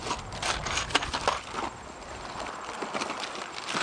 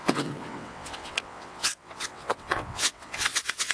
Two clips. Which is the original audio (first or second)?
first